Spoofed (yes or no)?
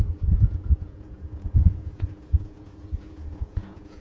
yes